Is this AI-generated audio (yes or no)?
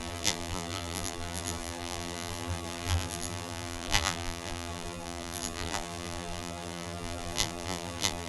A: yes